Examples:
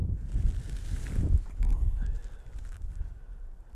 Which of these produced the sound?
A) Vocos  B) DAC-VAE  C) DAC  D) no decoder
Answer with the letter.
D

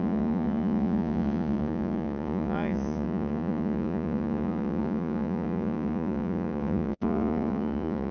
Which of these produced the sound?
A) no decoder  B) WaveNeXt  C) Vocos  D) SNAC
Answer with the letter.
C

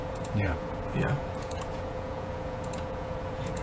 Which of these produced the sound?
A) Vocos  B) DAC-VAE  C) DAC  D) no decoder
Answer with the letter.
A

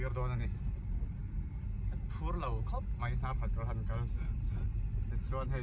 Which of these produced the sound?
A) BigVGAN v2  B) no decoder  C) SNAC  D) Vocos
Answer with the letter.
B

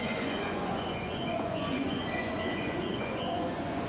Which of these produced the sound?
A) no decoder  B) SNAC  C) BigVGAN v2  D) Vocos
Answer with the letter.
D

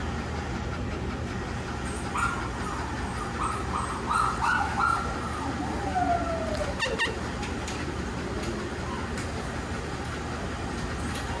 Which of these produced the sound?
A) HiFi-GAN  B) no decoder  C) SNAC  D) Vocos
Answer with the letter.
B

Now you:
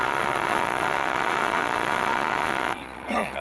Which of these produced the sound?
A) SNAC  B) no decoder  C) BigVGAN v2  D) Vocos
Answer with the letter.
D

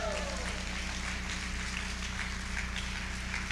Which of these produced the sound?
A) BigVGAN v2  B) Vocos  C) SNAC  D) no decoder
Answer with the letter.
D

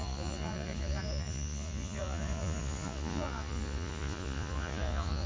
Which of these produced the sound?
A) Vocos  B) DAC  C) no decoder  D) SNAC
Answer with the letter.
A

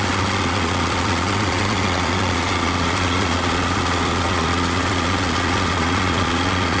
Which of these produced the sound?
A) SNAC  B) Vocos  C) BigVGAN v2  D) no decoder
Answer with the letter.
B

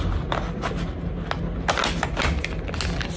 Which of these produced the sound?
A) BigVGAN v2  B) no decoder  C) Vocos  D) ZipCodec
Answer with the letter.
B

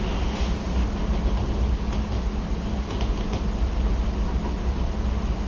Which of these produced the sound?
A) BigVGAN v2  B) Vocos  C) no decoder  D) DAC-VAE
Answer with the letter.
C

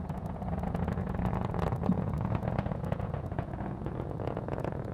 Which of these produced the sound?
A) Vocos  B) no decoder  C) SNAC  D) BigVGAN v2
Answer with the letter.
A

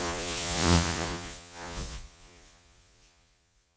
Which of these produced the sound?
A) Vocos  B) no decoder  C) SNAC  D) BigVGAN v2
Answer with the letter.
A